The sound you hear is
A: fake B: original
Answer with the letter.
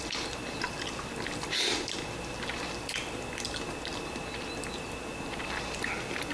B